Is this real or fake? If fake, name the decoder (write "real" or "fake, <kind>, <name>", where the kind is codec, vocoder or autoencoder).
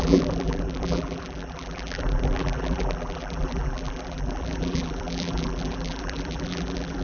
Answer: fake, vocoder, BigVGAN v2